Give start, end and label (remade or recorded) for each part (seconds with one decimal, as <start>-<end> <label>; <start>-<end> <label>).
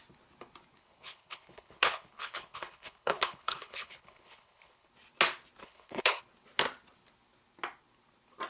0.0-0.8 recorded; 0.8-4.9 remade; 4.9-5.6 recorded; 5.6-6.2 remade; 6.2-8.5 recorded